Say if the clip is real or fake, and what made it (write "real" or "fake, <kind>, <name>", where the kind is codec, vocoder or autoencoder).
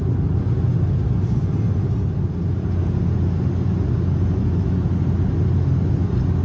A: real